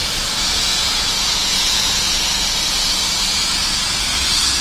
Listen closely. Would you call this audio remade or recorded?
remade